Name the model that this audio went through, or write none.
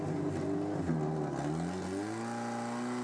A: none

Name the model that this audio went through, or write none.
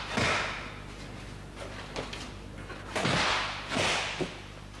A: none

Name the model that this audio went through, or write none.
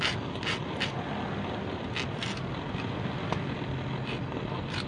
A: none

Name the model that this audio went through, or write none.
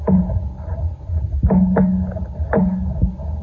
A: none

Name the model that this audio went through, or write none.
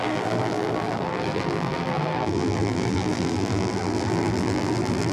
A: vocoder, BigVGAN v2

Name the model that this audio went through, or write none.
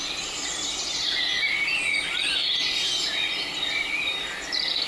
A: none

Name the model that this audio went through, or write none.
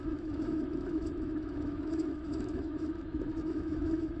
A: autoencoder, DAC-VAE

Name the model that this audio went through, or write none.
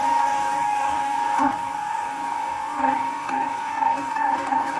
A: codec, DAC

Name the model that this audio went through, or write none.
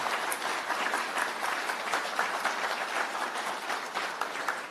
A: none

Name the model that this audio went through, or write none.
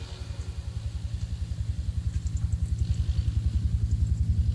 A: none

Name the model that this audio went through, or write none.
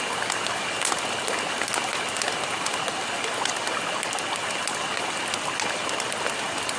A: none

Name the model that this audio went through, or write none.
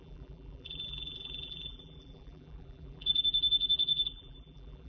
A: vocoder, BigVGAN v2